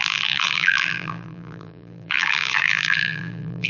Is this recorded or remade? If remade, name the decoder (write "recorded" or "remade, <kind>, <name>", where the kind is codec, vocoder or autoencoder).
remade, vocoder, BigVGAN v2